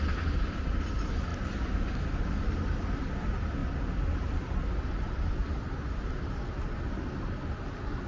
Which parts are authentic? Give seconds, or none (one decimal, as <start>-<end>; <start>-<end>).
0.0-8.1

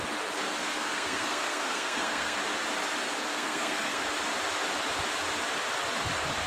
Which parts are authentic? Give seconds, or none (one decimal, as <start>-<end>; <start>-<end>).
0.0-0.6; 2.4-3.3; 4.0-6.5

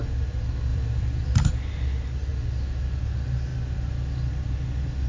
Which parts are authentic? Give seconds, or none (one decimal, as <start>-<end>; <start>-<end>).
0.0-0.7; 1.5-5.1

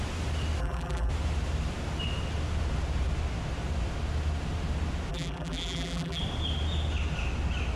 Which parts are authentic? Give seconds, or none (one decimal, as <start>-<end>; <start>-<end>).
0.0-0.6; 1.1-5.1; 6.2-7.8

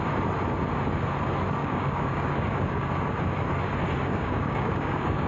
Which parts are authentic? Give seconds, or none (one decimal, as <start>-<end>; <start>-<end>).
0.0-1.6; 2.9-4.1

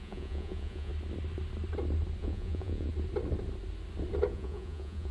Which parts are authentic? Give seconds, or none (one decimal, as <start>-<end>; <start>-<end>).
0.9-2.2; 2.9-4.3